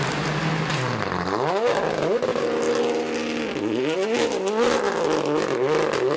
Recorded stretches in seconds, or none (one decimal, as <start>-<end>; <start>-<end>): 0.7-1.9; 2.3-6.2